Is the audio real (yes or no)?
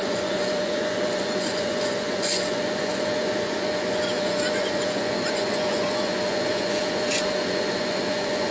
no